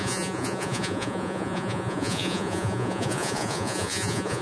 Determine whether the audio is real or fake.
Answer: fake